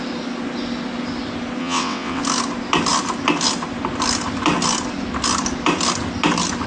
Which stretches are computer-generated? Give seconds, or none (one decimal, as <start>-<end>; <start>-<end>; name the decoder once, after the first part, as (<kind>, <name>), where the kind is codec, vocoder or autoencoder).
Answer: 1.6-2.2 (vocoder, WaveNeXt)